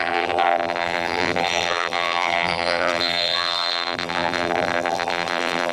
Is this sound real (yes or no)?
no